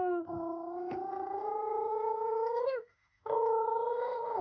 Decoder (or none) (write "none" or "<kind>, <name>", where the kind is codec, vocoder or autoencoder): autoencoder, DAC-VAE